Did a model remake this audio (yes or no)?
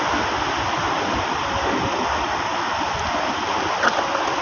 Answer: no